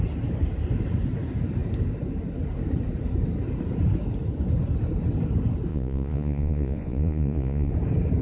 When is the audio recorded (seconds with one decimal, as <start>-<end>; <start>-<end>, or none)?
0.0-5.7; 7.7-8.2